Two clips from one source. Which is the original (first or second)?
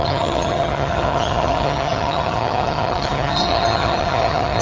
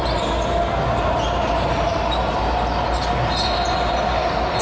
second